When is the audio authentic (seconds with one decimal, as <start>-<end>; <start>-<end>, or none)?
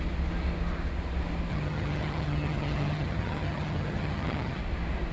0.0-1.5; 4.6-5.1